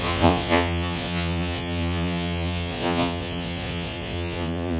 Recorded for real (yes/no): no